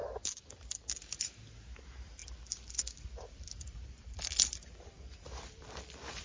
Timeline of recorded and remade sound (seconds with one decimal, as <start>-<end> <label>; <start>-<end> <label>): 0.0-0.8 remade; 0.8-6.2 recorded